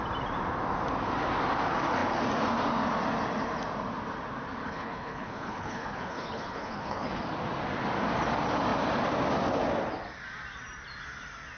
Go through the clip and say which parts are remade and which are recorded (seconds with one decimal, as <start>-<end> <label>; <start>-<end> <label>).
0.0-4.6 recorded; 4.6-7.2 remade; 7.2-11.6 recorded